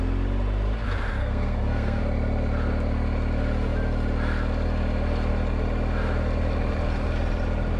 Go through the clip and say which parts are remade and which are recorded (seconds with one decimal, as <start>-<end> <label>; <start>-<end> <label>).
0.0-1.2 recorded; 1.2-2.0 remade; 2.0-7.8 recorded